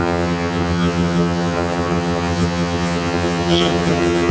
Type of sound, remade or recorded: remade